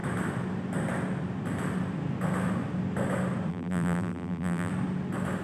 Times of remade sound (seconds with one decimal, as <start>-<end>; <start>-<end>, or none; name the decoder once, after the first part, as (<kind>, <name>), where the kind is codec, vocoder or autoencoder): 3.5-4.7 (vocoder, BigVGAN v2)